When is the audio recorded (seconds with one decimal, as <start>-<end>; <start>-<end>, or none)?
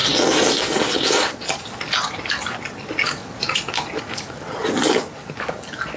0.0-6.0